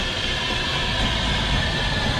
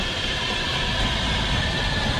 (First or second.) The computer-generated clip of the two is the second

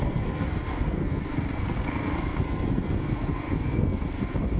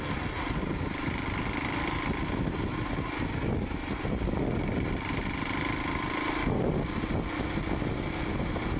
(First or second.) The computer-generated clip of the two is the first